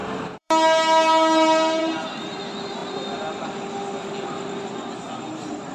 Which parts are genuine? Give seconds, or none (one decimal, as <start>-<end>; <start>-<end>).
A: 0.5-1.8; 2.4-5.7

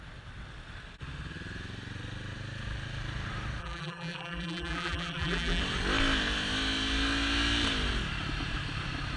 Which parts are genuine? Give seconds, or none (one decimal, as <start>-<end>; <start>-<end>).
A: 0.0-3.6; 5.6-9.2

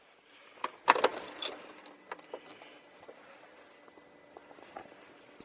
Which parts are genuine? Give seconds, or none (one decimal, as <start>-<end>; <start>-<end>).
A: 0.0-1.1; 1.7-4.4; 4.9-5.4

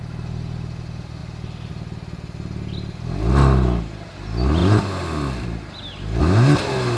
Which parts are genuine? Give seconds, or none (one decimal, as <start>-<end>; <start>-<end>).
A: 0.0-7.0

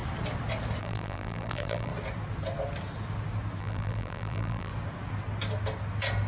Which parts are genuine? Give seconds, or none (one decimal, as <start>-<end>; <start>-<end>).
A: 0.0-0.8; 1.9-3.6; 4.7-6.3